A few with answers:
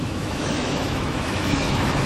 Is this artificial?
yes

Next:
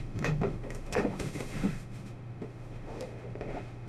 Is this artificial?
yes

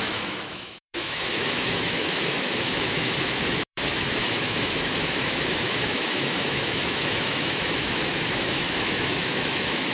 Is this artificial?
yes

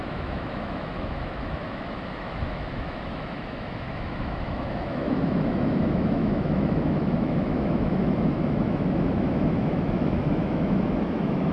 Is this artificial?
yes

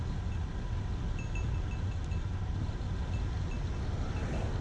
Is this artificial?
no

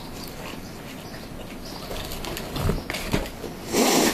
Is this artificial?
no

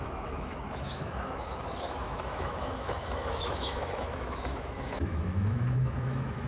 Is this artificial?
yes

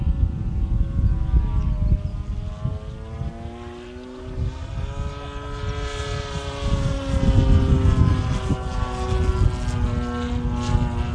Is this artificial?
no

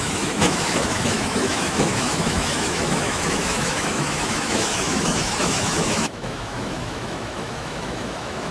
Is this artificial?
yes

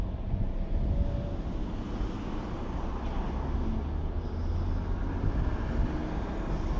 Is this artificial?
no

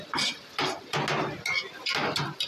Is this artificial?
no